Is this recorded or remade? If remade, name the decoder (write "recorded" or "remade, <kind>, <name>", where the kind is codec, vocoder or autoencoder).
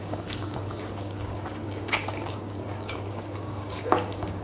remade, codec, DAC